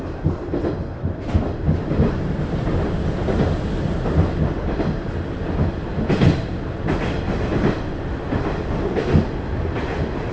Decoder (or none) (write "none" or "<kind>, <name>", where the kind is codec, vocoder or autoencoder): none